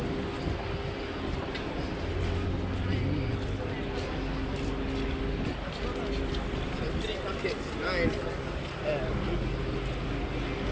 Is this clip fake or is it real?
real